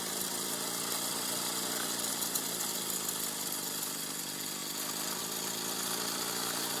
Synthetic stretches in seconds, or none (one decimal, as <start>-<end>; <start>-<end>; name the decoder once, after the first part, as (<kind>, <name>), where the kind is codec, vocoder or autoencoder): none